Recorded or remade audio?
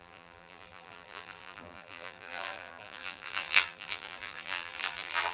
remade